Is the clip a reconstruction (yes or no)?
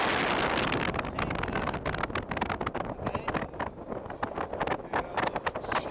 no